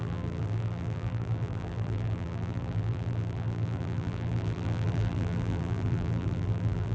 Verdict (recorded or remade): remade